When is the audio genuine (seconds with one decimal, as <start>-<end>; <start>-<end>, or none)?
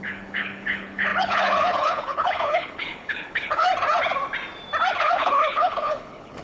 3.7-5.0